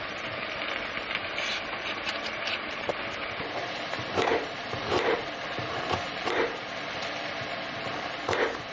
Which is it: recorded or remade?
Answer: remade